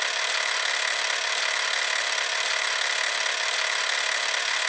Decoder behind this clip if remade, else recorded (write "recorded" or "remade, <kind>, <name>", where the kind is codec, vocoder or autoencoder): recorded